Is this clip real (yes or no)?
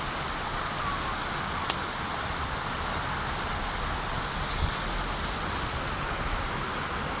yes